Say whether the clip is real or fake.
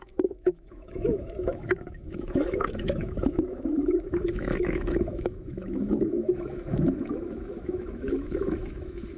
fake